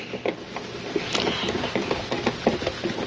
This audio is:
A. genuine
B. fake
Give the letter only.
A